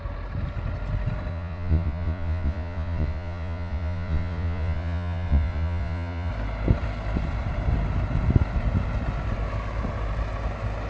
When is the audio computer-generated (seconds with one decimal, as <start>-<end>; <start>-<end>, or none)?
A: 1.3-6.3